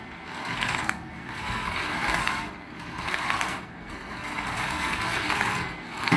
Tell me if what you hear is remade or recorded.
remade